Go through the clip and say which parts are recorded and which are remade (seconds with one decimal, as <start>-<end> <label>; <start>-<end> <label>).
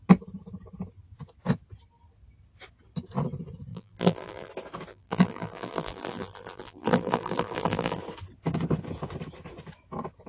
0.0-3.7 recorded; 3.7-4.5 remade; 4.5-4.9 recorded; 4.9-8.0 remade; 8.0-10.3 recorded